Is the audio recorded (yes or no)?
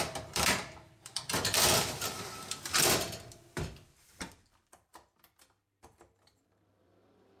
no